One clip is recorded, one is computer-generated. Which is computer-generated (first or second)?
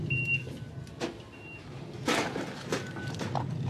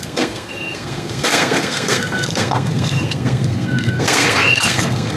second